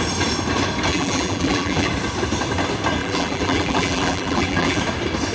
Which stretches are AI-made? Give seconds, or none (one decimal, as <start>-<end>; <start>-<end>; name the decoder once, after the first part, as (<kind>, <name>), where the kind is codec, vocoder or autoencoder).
0.9-1.9 (vocoder, BigVGAN v2); 3.0-4.8